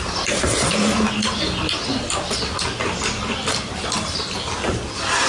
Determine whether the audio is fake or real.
real